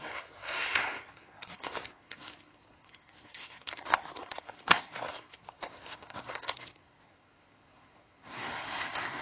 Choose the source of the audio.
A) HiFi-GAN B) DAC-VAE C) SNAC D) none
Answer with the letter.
C